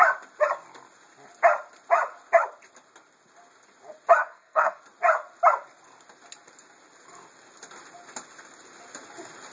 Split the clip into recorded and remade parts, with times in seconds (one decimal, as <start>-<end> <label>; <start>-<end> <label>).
0.0-4.2 recorded; 4.2-4.8 remade; 4.8-9.5 recorded